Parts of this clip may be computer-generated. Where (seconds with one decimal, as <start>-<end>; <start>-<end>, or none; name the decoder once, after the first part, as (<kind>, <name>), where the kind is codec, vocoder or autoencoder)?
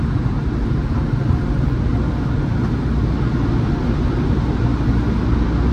0.0-1.9 (vocoder, BigVGAN v2); 3.8-4.7